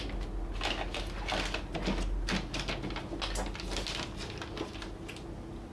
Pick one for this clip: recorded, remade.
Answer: recorded